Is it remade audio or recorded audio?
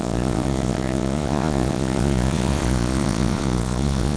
remade